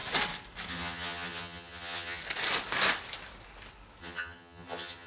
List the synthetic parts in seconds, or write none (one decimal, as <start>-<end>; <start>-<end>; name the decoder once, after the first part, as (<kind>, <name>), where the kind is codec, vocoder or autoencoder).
0.7-2.2 (vocoder, HiFi-GAN); 4.0-5.1